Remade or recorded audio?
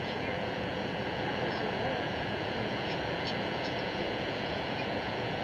remade